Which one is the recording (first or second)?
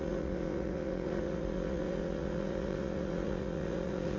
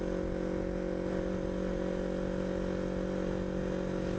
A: second